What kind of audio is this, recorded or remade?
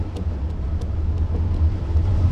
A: recorded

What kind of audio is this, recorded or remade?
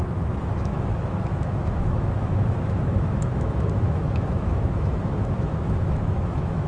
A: remade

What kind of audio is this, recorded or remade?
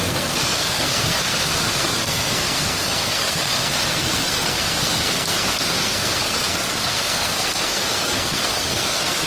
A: remade